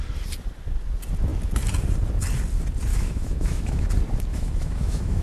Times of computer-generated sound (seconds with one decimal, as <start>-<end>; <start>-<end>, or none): 2.9-3.9; 4.3-5.2